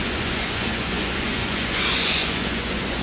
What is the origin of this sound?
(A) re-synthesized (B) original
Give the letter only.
A